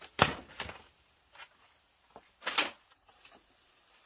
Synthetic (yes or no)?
no